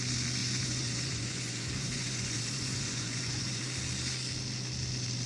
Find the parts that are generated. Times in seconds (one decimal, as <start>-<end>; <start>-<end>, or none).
0.4-3.6